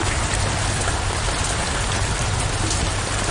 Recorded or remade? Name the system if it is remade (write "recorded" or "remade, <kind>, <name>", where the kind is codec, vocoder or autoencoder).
recorded